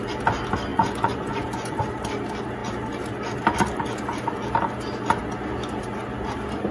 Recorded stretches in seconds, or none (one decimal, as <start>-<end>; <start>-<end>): 0.0-0.7; 1.8-6.7